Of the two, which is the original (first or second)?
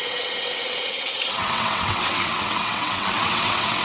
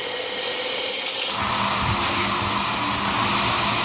second